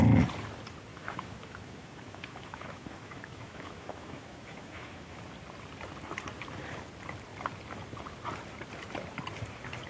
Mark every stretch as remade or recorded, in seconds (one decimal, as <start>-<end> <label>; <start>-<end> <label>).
0.0-0.9 recorded; 0.9-5.2 remade; 5.2-9.9 recorded